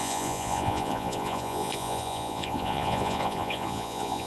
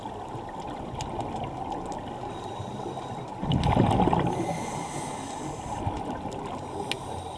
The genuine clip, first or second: second